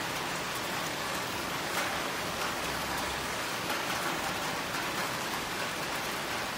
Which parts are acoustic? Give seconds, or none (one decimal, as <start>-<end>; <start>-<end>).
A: 0.0-0.9; 4.2-5.0; 5.7-6.6